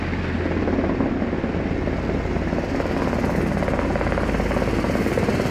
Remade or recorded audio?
recorded